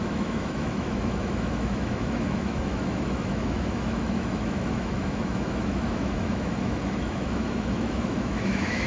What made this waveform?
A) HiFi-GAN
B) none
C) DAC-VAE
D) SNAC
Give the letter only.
C